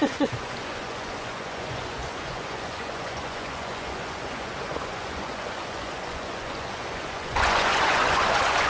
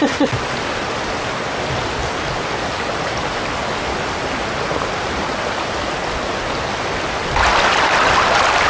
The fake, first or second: first